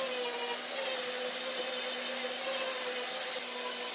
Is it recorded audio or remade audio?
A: recorded